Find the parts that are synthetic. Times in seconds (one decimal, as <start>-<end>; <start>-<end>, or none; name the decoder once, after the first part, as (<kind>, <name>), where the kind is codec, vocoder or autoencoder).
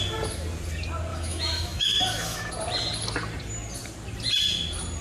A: 1.1-2.5 (autoencoder, DAC-VAE)